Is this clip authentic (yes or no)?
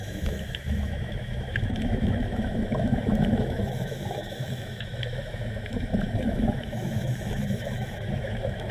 no